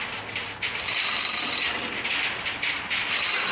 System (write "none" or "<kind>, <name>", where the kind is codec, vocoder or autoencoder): none